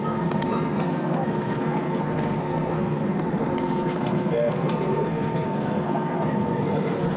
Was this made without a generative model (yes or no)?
no